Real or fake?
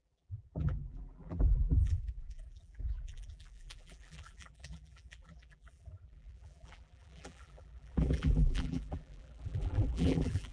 fake